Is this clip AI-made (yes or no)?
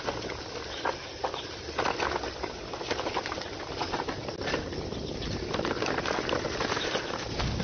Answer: no